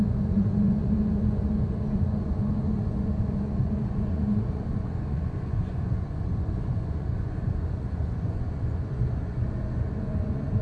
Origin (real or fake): fake